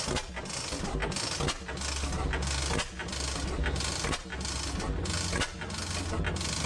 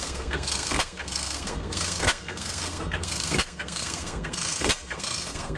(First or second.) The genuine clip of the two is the first